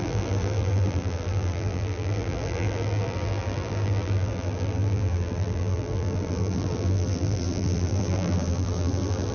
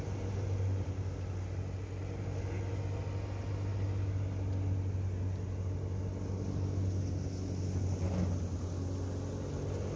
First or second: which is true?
second